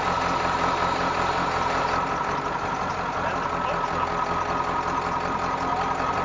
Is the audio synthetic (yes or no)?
no